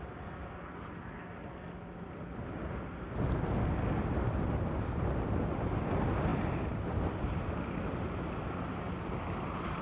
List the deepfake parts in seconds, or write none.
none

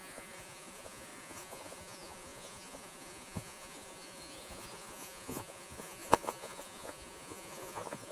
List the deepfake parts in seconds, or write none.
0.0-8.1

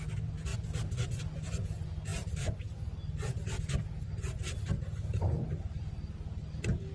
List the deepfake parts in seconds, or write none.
none